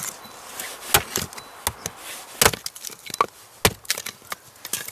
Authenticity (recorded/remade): recorded